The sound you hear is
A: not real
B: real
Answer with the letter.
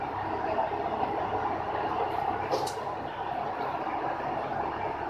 B